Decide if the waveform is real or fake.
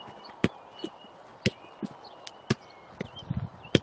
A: real